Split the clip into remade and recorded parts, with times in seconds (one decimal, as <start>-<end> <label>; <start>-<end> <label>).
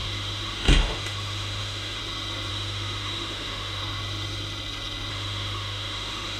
0.0-2.0 remade; 2.0-2.5 recorded; 2.5-3.8 remade; 3.8-5.1 recorded; 5.1-6.4 remade